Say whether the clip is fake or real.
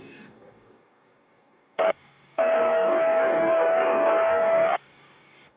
fake